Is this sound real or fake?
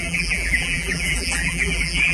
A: fake